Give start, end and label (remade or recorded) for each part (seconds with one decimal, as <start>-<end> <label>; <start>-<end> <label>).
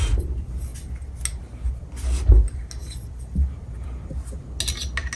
0.0-5.2 recorded